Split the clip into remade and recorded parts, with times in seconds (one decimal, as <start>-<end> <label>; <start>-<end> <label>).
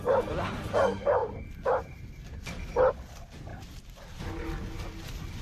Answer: 0.0-3.5 recorded; 3.5-4.2 remade; 4.2-5.4 recorded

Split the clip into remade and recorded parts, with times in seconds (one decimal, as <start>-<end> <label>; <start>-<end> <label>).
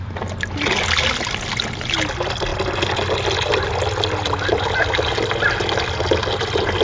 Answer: 0.0-6.8 recorded